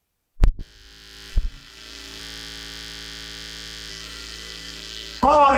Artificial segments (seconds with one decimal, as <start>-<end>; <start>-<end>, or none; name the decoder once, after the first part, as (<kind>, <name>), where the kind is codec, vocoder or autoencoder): 1.3-2.2 (codec, SNAC); 3.9-5.6